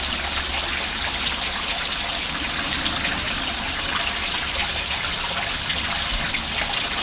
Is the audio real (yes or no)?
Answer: yes